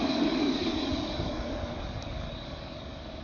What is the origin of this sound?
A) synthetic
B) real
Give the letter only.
A